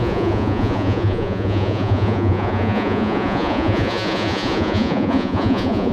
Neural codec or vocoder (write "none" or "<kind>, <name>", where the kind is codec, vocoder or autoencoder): vocoder, Vocos